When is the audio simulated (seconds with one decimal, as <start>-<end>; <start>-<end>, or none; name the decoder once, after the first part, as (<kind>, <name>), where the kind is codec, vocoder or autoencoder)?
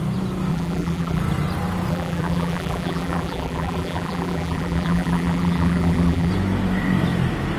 0.5-1.2 (vocoder, BigVGAN v2); 1.9-6.3